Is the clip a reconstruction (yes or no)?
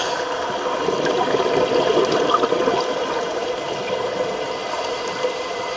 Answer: no